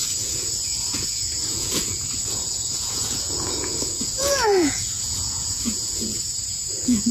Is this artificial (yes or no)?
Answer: yes